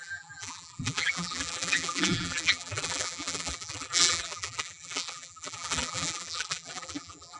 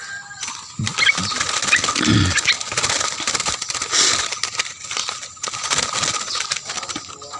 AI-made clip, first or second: first